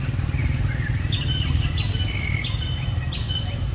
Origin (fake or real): real